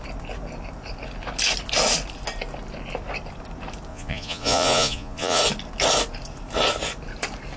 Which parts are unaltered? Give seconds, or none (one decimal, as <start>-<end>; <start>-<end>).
0.0-3.9; 5.4-7.6

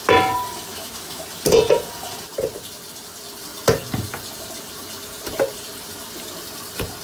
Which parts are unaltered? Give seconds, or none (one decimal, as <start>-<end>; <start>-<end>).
0.0-0.7; 1.2-7.0

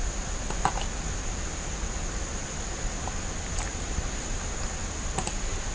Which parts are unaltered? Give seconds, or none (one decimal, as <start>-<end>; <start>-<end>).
0.0-5.7

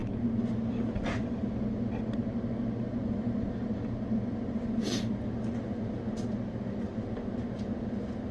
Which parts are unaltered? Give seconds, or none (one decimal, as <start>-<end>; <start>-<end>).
0.0-8.3

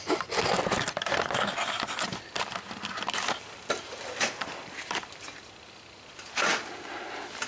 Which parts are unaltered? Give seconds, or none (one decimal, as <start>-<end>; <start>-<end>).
0.0-7.5

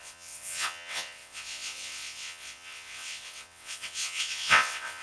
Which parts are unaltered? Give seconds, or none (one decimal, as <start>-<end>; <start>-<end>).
none

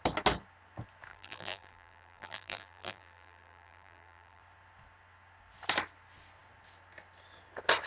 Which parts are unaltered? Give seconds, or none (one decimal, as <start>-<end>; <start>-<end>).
0.0-1.1; 4.4-7.9

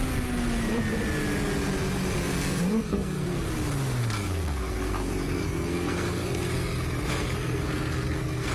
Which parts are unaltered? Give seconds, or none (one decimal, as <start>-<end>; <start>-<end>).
0.0-2.3; 3.5-4.0